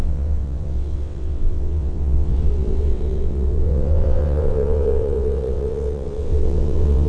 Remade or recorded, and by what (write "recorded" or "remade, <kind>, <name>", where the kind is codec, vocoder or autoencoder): remade, vocoder, WaveNeXt